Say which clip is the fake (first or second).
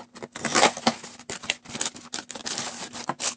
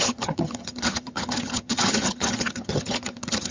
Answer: second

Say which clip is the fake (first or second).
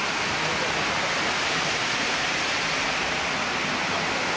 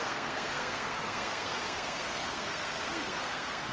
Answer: second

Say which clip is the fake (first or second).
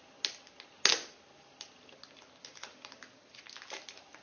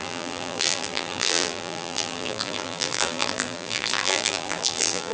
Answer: second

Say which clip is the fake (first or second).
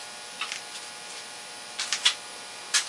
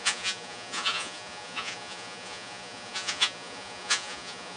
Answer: second